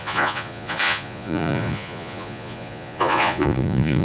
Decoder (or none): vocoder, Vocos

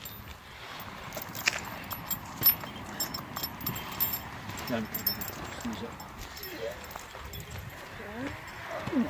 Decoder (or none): none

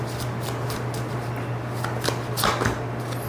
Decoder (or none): none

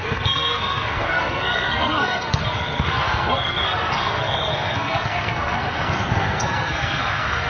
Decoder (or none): codec, SNAC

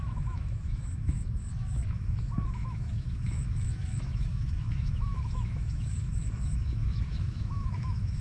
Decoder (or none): autoencoder, DAC-VAE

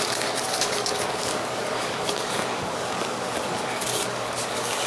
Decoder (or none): codec, DAC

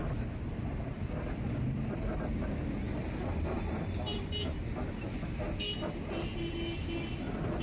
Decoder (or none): none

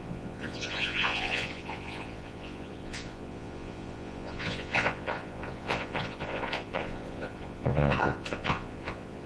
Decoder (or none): vocoder, Vocos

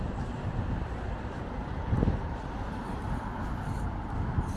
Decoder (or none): none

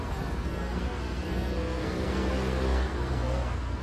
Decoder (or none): codec, SNAC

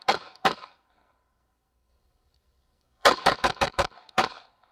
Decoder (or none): codec, SNAC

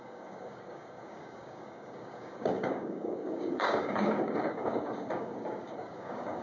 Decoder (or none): codec, DAC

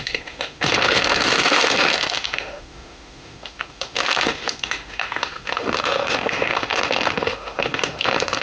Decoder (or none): autoencoder, DAC-VAE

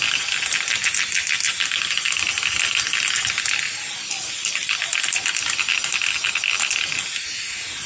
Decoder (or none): none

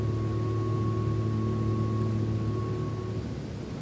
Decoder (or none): none